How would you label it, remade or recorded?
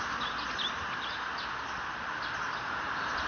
recorded